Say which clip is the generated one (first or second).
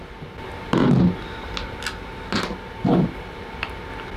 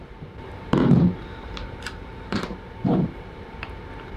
second